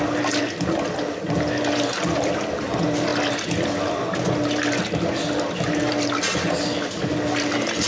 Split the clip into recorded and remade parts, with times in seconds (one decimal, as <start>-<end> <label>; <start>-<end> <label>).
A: 0.0-7.9 recorded